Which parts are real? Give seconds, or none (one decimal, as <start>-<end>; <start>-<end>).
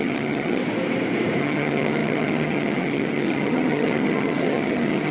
0.6-1.4